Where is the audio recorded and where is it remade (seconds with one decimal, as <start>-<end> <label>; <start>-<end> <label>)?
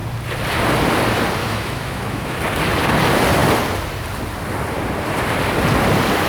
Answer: 0.0-1.4 recorded; 1.4-2.4 remade; 2.4-6.3 recorded